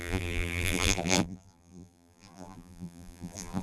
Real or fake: fake